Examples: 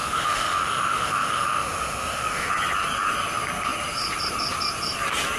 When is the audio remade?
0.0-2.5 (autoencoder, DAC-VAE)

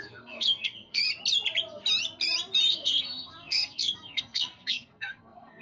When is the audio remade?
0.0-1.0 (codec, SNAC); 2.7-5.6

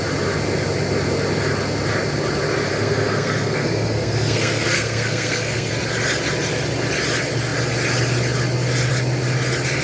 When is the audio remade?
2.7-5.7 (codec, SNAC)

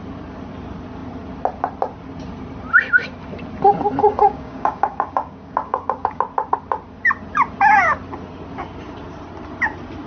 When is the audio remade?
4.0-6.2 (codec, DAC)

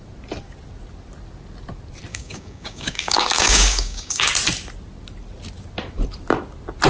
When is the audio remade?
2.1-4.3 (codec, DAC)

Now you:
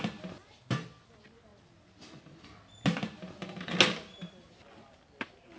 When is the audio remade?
none

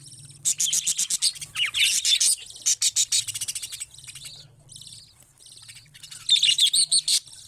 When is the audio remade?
none